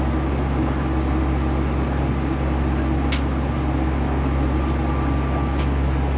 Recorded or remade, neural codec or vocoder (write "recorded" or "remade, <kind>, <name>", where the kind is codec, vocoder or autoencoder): recorded